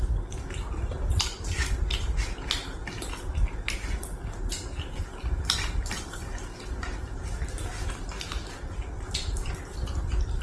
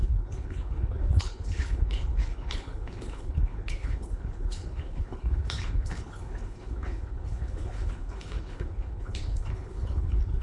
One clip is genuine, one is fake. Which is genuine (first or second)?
first